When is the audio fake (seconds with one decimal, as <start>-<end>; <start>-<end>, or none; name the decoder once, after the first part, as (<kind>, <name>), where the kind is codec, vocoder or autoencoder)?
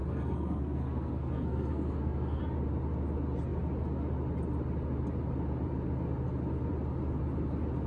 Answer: 0.0-2.4 (codec, SNAC)